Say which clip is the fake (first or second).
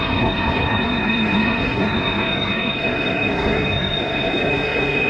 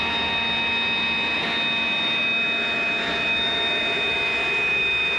first